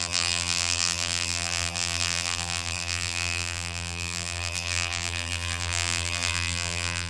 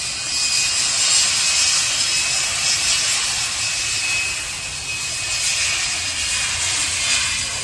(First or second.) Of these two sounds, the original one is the second